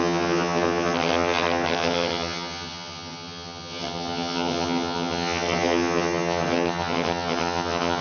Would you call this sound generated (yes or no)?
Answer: yes